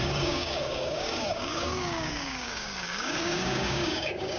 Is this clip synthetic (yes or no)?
yes